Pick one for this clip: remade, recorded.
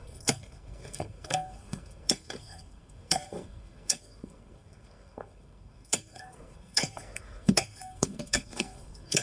remade